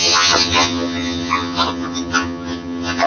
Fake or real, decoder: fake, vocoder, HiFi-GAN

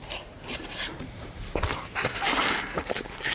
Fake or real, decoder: fake, vocoder, BigVGAN v2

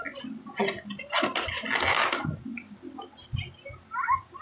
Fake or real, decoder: real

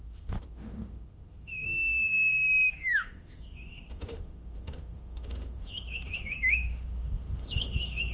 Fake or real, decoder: fake, autoencoder, DAC-VAE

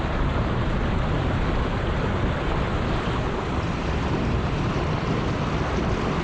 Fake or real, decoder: real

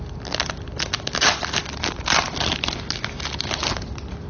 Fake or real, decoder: real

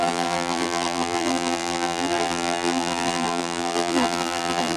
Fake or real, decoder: fake, vocoder, BigVGAN v2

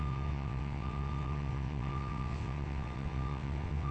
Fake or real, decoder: fake, vocoder, WaveNeXt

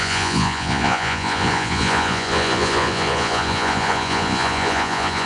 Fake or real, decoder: fake, vocoder, Vocos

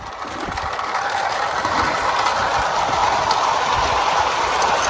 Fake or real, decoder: real